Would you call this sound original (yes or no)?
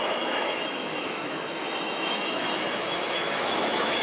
no